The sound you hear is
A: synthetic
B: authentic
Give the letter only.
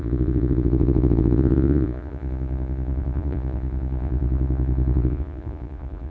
A